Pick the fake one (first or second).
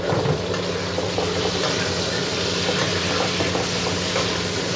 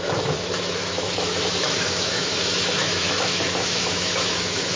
second